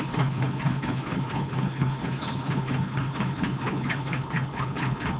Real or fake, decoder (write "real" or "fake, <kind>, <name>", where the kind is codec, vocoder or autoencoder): fake, codec, HILCodec